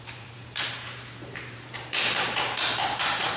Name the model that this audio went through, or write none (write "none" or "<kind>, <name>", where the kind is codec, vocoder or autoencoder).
vocoder, BigVGAN v2